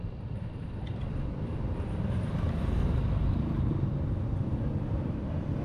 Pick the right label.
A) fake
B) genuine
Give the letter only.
A